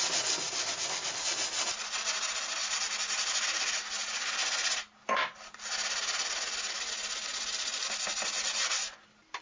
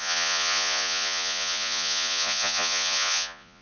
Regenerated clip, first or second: second